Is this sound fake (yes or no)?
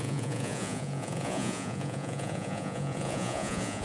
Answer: yes